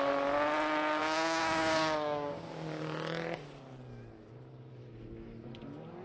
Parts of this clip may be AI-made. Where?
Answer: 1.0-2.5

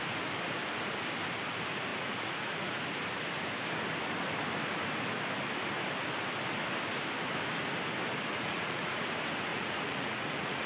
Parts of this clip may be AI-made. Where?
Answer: 1.9-2.8; 8.3-9.0; 9.5-10.7

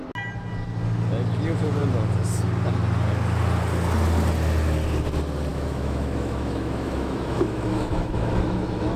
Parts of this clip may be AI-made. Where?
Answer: 5.5-9.0

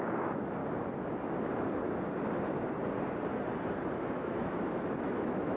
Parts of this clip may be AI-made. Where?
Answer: 0.0-0.6; 4.0-5.6